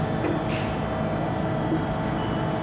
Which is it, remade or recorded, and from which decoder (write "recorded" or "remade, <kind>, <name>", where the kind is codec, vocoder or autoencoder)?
recorded